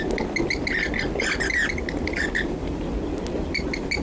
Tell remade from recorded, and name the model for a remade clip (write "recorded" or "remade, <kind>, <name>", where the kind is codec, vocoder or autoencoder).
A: recorded